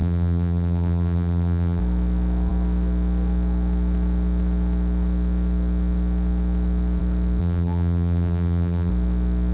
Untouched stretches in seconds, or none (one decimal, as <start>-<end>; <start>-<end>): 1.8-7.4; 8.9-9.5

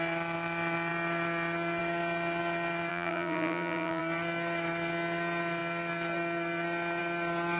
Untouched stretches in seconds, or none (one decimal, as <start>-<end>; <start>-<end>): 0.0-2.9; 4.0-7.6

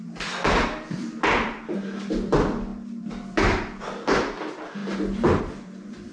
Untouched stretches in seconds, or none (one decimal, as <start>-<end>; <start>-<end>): 4.8-5.4

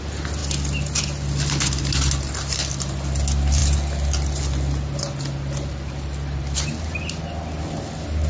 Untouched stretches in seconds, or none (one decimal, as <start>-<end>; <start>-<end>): 0.0-3.6; 7.6-8.3